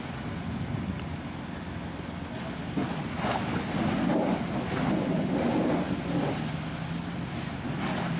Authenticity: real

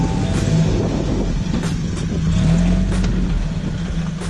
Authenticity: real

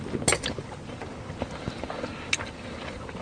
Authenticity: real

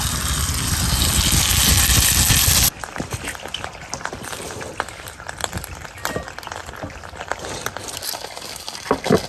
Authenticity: real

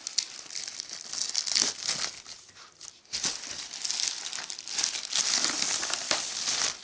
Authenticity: real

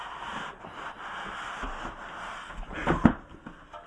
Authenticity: real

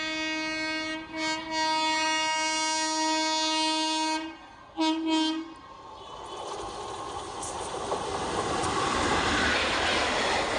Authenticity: real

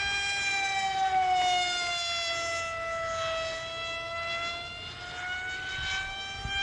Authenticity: real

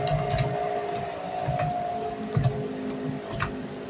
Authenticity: real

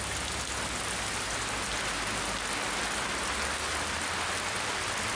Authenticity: real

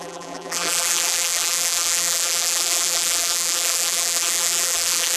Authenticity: fake